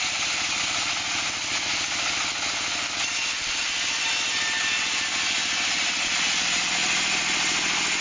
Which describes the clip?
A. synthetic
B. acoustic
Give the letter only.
B